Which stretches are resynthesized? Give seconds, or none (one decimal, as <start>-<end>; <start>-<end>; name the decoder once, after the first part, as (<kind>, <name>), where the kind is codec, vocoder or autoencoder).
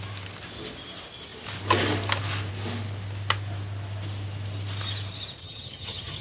5.4-6.2 (vocoder, HiFi-GAN)